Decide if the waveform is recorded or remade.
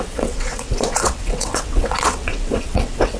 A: remade